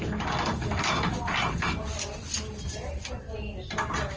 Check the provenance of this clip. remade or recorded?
recorded